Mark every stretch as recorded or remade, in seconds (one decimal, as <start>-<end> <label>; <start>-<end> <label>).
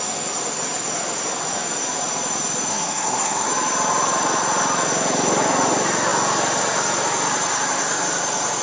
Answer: 0.0-2.7 recorded; 2.7-3.5 remade; 3.5-8.6 recorded